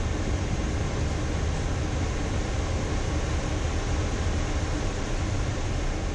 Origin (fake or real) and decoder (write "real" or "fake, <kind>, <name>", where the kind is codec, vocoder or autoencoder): real